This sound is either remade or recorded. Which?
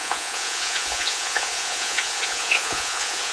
remade